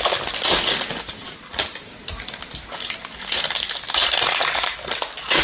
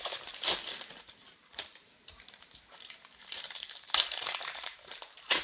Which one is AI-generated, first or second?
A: second